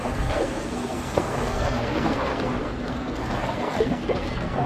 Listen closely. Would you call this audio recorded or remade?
remade